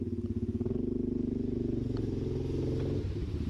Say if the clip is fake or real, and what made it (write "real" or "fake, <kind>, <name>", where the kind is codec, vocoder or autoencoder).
real